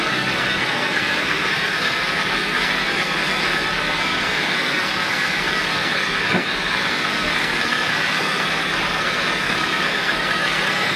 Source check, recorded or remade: remade